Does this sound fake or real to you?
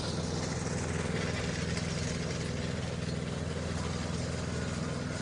real